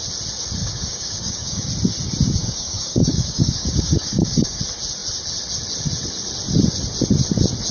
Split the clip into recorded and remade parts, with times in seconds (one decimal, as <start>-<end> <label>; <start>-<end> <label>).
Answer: 0.0-0.6 recorded; 0.6-1.7 remade; 1.7-2.4 recorded; 2.4-4.6 remade; 4.6-7.7 recorded